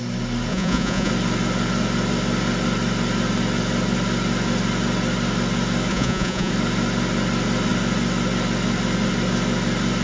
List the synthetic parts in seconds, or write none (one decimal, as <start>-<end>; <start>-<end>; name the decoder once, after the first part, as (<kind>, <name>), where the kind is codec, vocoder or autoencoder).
0.5-1.1 (vocoder, Vocos); 5.9-6.5